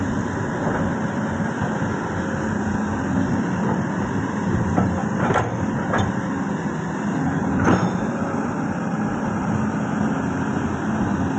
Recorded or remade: recorded